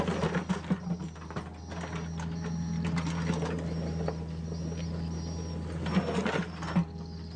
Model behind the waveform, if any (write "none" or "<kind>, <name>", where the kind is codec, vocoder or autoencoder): none